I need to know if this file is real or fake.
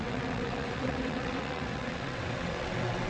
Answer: fake